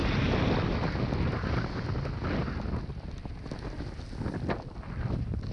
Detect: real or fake real